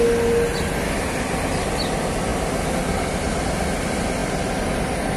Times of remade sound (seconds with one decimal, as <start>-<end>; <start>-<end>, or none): none